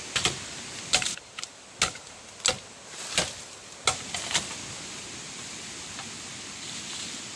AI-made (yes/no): no